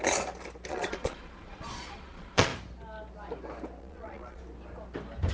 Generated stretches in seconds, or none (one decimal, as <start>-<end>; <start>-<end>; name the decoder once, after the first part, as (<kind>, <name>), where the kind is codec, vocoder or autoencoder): 0.7-2.5 (vocoder, Vocos); 3.8-4.4